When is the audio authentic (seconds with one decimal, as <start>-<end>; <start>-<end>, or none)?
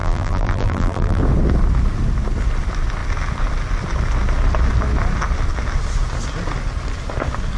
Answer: 1.2-7.6